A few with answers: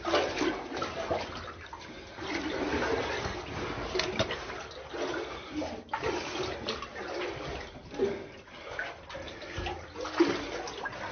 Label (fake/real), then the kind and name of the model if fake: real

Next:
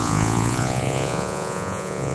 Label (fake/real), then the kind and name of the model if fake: fake, vocoder, Vocos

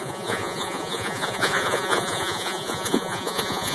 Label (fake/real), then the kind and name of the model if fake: fake, vocoder, Vocos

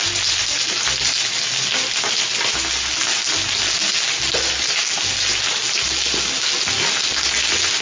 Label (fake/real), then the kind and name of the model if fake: real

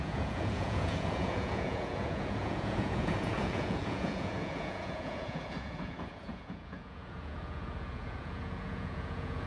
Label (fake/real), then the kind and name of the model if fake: fake, vocoder, Vocos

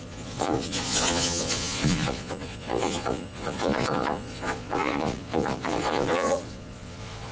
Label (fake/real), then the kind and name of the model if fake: fake, vocoder, Vocos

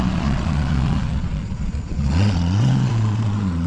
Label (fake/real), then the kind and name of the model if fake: fake, vocoder, Vocos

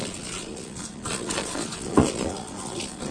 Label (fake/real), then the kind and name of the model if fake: fake, vocoder, Vocos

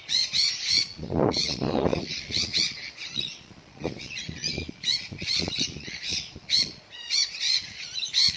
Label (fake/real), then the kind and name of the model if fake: fake, vocoder, Vocos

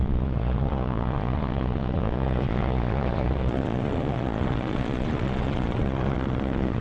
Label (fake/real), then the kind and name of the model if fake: fake, vocoder, Vocos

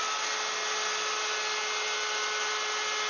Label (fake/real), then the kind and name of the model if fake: real